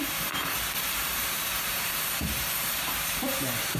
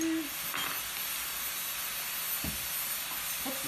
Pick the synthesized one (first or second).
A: first